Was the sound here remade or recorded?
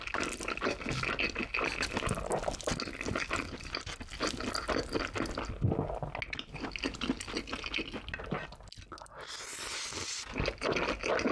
recorded